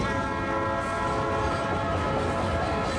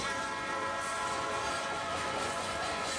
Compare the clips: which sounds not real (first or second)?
second